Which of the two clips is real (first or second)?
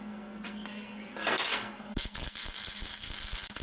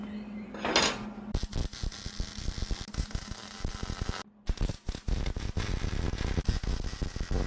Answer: second